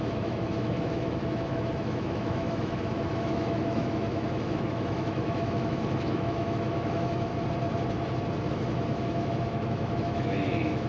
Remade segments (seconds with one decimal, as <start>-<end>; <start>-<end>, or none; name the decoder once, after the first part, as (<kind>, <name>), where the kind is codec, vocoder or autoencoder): 0.0-7.3 (autoencoder, DAC-VAE); 8.5-10.9